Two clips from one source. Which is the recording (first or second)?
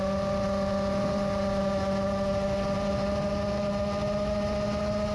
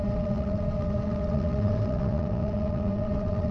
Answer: first